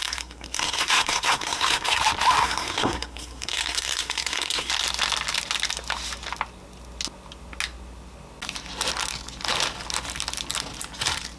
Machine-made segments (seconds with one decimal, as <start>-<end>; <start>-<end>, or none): 0.0-2.0; 2.4-4.7